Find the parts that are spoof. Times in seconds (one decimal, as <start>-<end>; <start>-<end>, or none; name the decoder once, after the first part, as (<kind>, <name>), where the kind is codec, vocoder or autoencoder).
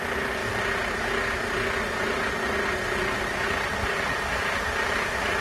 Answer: none